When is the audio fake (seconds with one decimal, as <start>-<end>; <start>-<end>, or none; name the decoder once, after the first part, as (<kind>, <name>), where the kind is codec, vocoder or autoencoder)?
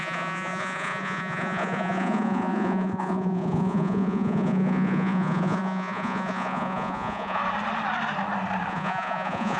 0.0-7.4 (vocoder, Vocos); 8.7-9.6